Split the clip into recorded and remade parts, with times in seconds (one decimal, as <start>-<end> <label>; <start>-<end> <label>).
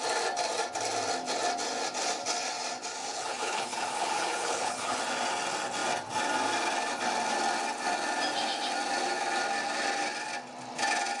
0.0-3.0 recorded; 3.0-5.0 remade; 5.0-11.2 recorded